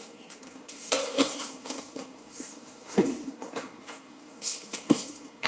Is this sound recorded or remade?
remade